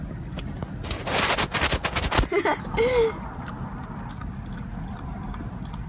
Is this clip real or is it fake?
real